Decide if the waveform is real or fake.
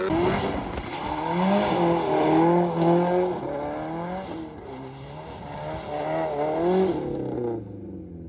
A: real